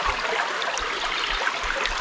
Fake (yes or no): no